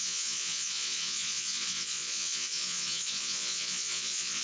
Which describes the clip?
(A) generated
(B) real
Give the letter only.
A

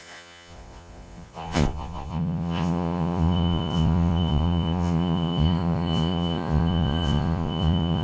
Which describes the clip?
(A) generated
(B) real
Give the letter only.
A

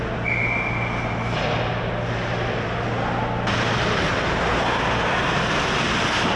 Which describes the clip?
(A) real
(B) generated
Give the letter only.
A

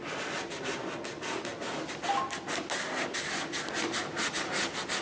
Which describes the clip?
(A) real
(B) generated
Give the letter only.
A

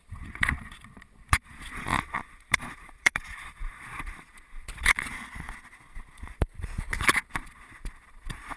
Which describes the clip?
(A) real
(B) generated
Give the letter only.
B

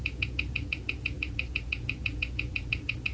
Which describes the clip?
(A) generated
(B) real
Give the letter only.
A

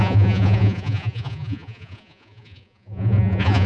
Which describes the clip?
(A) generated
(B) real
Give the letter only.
A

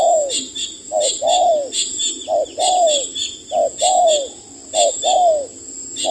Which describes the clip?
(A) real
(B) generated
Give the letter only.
A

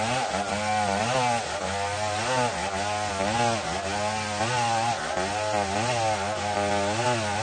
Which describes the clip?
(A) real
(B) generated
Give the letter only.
A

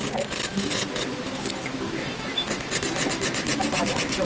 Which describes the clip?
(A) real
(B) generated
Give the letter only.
A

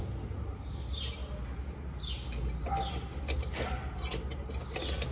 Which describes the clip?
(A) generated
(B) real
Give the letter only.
B